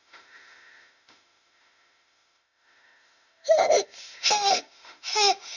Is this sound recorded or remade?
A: remade